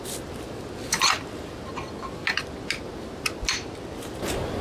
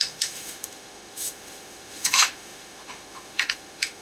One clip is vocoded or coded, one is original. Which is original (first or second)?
first